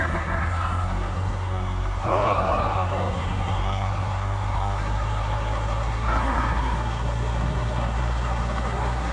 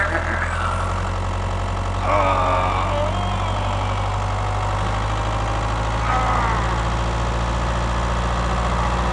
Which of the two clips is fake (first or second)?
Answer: first